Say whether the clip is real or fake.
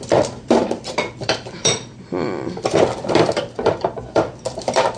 fake